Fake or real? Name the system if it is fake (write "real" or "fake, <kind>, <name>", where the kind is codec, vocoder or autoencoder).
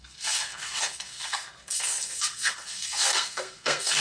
fake, codec, SNAC